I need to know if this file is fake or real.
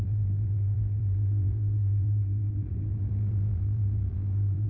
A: fake